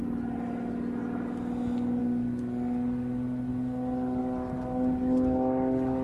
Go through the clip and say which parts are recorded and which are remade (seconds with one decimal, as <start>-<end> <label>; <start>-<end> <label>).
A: 0.0-6.0 recorded